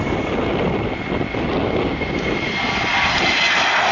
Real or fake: real